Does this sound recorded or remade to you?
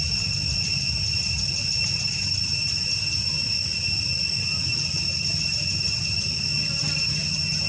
recorded